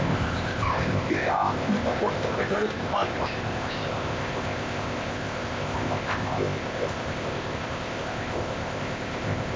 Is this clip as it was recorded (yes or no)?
no